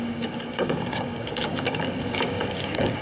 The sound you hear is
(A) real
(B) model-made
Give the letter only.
B